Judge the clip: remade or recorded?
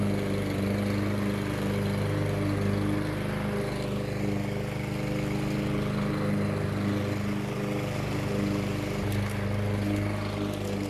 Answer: recorded